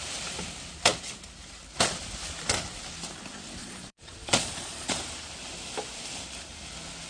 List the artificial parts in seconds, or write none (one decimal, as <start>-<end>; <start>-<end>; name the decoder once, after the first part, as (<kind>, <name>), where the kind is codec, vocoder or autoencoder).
3.6-5.0 (vocoder, Vocos)